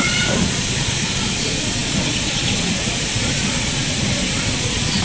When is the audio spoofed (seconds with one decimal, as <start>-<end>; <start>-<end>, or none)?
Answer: 0.0-5.0